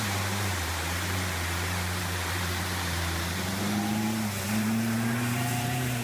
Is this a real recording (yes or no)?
no